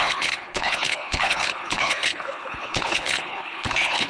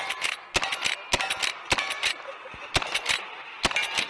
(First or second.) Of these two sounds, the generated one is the first